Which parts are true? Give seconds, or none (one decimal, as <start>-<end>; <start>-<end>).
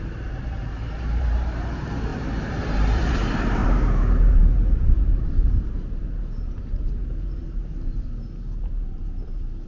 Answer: 7.4-8.6